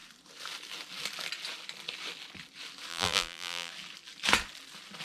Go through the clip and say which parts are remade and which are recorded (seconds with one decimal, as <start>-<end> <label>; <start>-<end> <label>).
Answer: 0.0-2.9 recorded; 2.9-3.7 remade; 3.7-5.0 recorded